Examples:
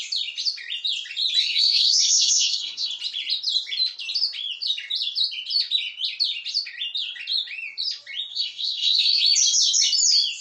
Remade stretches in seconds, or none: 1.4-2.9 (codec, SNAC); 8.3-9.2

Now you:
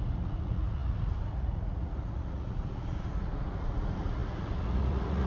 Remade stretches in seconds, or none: 0.0-5.3 (vocoder, Vocos)

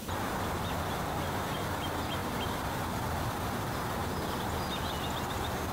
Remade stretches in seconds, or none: none

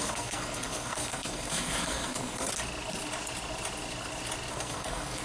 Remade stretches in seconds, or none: 0.0-2.5 (codec, SNAC); 4.5-5.2

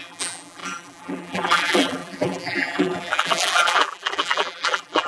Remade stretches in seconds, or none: 0.0-5.1 (vocoder, BigVGAN v2)

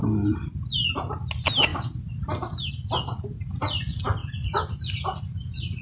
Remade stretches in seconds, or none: none